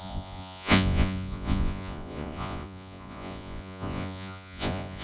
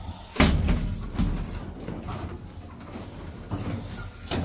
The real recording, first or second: second